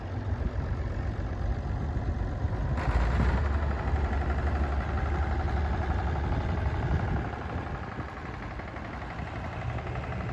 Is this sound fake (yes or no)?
no